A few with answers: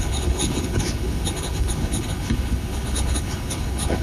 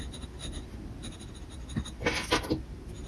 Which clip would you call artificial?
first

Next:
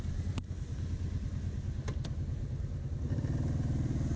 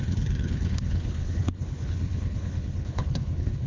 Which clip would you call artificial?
second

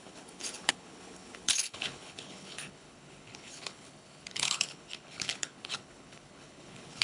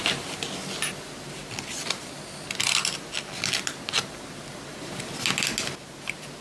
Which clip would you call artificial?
first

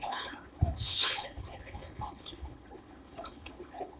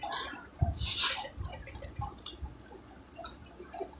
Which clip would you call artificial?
first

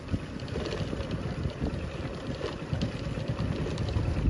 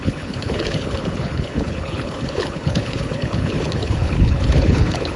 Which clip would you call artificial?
second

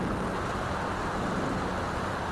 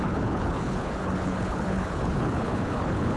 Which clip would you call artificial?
second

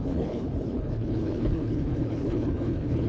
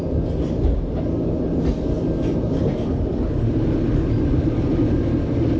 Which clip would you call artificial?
first